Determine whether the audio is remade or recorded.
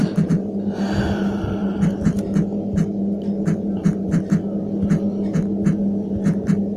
recorded